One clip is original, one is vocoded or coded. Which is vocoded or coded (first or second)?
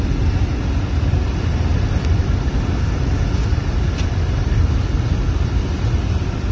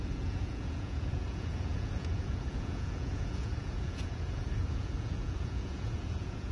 second